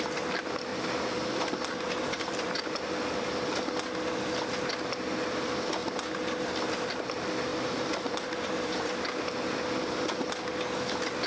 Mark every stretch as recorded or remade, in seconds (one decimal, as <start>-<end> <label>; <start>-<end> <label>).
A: 0.0-0.7 recorded; 0.7-2.7 remade; 2.7-7.5 recorded; 7.5-8.9 remade; 8.9-11.3 recorded